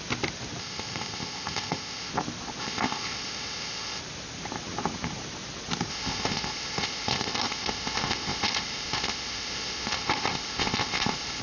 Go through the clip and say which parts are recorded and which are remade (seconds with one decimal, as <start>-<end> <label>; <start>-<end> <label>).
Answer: 0.0-0.6 recorded; 0.6-2.1 remade; 2.1-2.6 recorded; 2.6-4.0 remade; 4.0-5.9 recorded; 5.9-11.4 remade